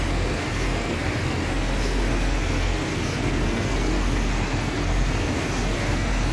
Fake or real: fake